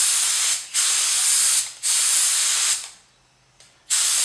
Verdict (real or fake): real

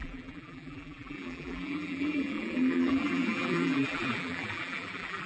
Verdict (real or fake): fake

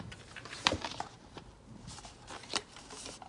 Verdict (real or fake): fake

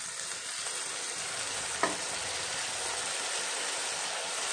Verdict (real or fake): real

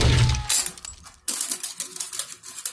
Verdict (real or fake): real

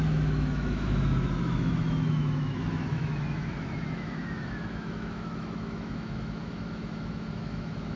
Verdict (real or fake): fake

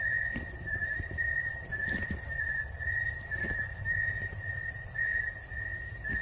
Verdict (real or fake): real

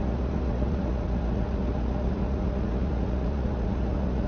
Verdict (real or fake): fake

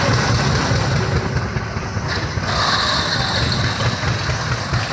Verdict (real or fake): real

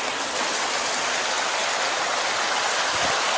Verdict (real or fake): real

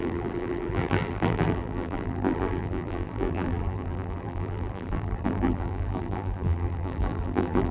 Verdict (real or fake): fake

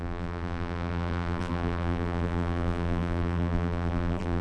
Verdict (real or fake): fake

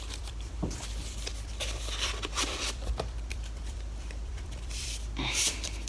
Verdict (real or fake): fake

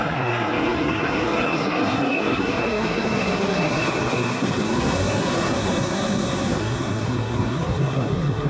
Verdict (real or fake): fake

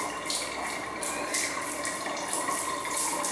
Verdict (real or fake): real